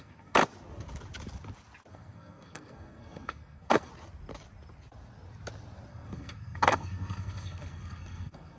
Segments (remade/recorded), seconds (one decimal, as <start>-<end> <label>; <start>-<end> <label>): 0.0-0.4 remade; 0.4-1.9 recorded; 1.9-3.9 remade; 3.9-5.9 recorded; 5.9-8.6 remade